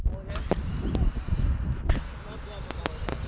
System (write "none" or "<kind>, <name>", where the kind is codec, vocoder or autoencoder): none